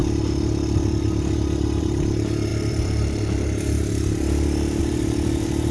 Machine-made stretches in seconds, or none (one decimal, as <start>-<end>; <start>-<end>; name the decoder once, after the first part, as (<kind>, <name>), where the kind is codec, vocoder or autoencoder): 1.8-5.7 (vocoder, BigVGAN v2)